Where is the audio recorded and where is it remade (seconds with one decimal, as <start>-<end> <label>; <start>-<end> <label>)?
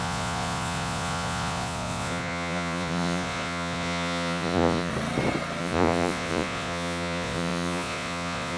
0.0-4.9 remade; 4.9-5.6 recorded; 5.6-8.6 remade